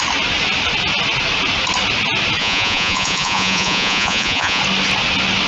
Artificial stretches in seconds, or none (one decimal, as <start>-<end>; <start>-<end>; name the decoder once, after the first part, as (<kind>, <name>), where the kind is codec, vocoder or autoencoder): 2.4-4.6 (vocoder, Vocos)